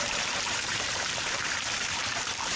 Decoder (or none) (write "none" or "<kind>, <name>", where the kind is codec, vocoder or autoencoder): vocoder, BigVGAN v2